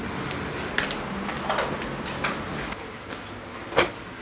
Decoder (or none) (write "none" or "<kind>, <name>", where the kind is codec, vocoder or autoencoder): none